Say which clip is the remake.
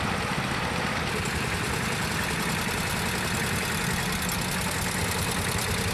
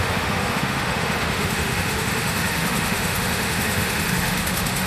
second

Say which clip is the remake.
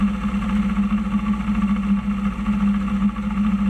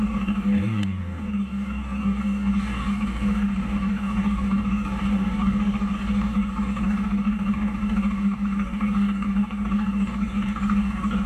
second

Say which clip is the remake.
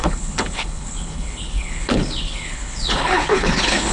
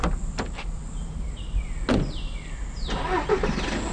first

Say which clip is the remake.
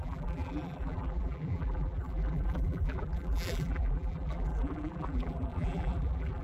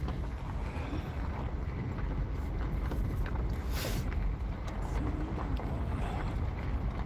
first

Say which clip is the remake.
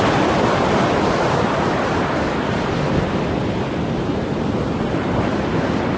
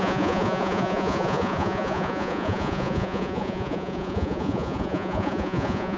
second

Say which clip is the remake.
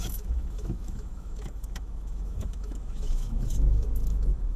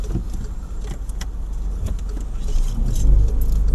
first